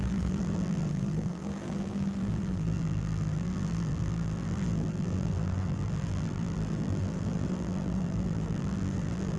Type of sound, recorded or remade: remade